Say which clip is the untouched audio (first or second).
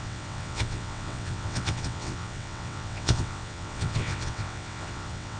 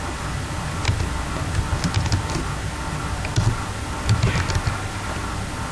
second